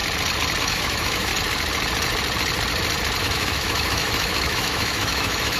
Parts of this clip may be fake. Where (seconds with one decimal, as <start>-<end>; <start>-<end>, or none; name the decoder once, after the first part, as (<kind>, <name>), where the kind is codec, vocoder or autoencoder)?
0.6-1.3 (autoencoder, DAC-VAE); 3.2-5.6